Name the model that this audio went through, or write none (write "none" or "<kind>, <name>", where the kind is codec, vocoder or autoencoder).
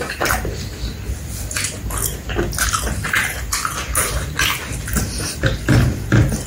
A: none